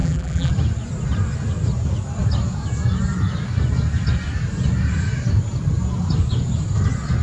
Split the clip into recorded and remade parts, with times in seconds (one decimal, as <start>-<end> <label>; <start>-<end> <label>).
0.0-0.5 remade; 0.5-7.2 recorded